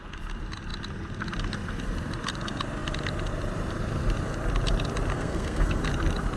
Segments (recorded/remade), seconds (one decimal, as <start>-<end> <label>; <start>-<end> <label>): 0.0-5.1 recorded; 5.1-5.8 remade; 5.8-6.4 recorded